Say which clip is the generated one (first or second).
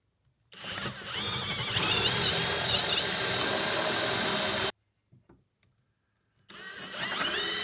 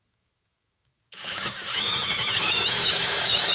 second